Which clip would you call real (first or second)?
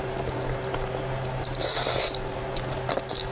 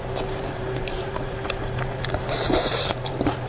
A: first